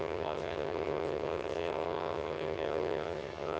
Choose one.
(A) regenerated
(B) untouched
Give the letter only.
A